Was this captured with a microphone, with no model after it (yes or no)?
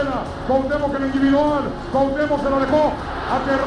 yes